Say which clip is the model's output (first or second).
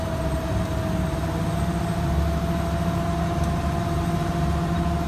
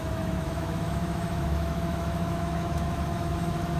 second